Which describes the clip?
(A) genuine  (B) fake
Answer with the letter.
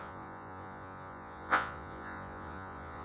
B